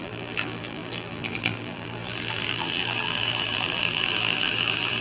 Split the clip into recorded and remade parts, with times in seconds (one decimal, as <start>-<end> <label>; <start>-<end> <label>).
0.0-5.0 remade